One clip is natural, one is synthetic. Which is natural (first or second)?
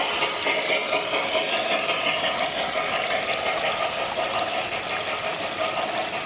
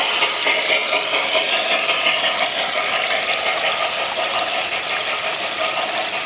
first